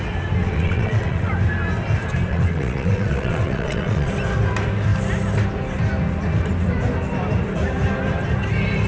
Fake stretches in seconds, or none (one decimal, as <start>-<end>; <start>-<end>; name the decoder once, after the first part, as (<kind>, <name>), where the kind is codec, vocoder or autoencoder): 0.4-1.3 (vocoder, WaveNeXt); 2.3-4.1